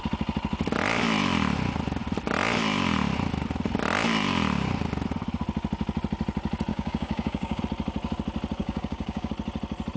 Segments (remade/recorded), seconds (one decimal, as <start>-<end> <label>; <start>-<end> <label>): 0.0-6.7 recorded; 6.7-7.6 remade; 7.6-8.6 recorded; 8.6-9.3 remade; 9.3-10.0 recorded